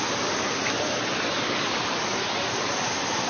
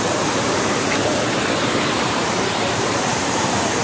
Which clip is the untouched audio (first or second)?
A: first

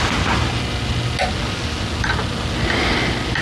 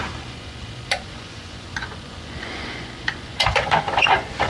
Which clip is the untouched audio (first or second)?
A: first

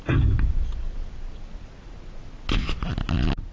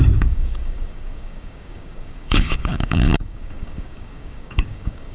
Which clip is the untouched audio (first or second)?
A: first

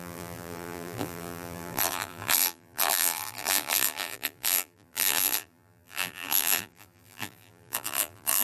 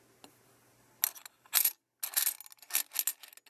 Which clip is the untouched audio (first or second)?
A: second